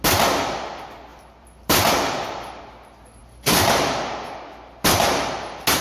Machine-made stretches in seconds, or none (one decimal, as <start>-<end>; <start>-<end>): 1.1-2.6